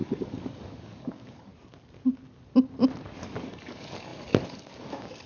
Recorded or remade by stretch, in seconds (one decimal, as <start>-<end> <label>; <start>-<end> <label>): 0.0-1.5 remade; 1.5-3.0 recorded; 3.0-5.3 remade